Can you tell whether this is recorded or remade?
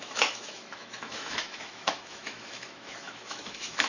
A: remade